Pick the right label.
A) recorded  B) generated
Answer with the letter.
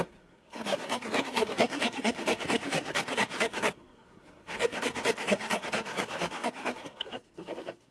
B